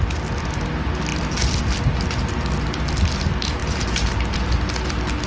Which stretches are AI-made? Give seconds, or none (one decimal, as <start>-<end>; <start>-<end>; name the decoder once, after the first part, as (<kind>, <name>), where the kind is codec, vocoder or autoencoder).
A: 3.6-4.5 (vocoder, BigVGAN v2)